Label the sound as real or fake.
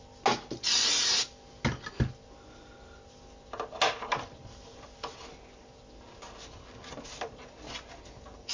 real